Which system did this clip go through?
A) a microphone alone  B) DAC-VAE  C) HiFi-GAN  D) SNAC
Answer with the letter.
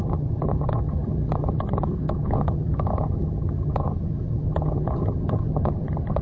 C